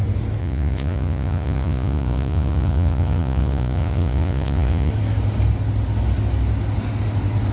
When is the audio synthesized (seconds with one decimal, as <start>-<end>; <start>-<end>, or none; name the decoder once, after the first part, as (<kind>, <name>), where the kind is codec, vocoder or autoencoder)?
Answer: 0.4-4.9 (vocoder, Vocos)